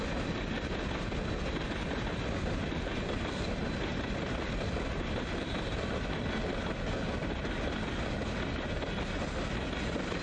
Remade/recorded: recorded